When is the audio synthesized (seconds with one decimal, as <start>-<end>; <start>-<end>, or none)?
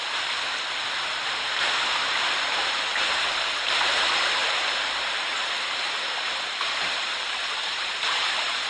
0.0-8.7